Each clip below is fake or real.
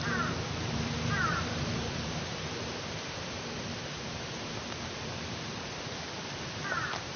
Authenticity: fake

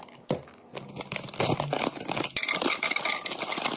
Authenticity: real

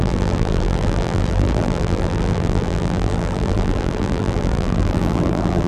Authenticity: fake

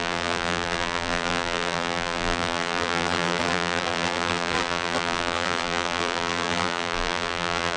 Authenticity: fake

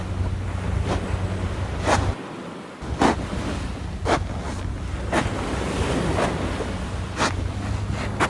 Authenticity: real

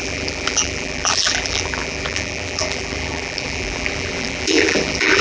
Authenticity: fake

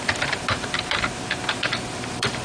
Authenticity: fake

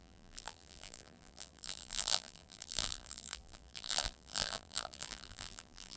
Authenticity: fake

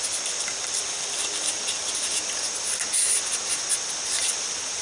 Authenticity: real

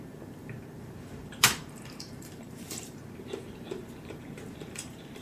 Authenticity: fake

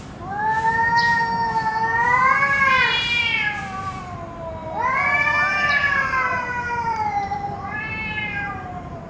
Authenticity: fake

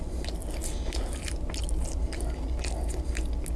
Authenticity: real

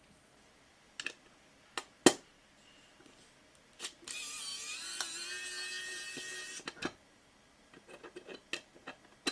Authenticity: real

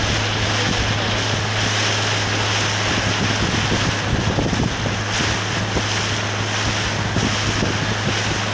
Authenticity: real